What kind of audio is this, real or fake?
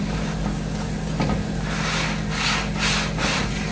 real